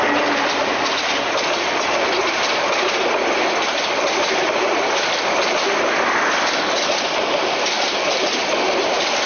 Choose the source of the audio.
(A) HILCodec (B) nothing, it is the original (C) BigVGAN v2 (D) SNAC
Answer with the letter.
B